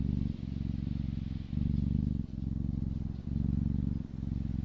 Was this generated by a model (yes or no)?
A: no